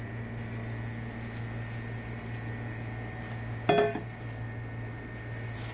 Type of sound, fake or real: real